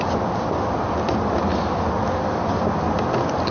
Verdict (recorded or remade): recorded